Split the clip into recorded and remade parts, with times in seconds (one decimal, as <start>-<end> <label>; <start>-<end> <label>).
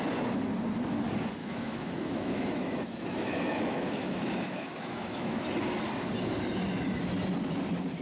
0.0-1.4 recorded; 1.4-5.4 remade; 5.4-8.0 recorded